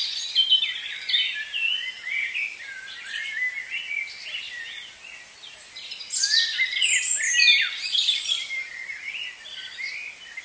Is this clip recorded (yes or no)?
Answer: yes